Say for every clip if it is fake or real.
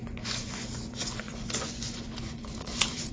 fake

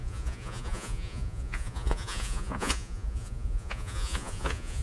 fake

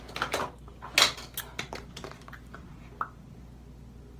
real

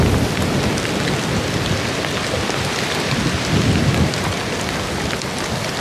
real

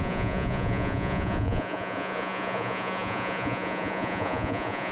fake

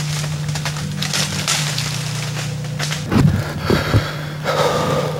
real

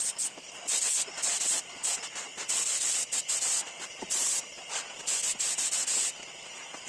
real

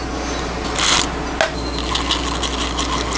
real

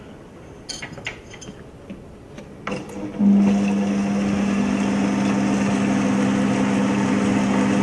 real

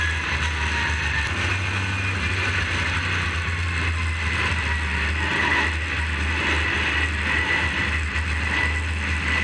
real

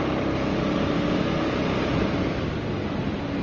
real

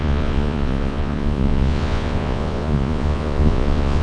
fake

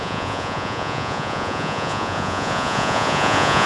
fake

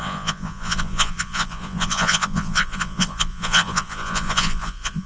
fake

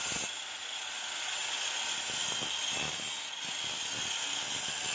real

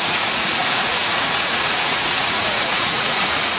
fake